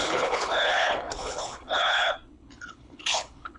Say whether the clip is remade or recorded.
remade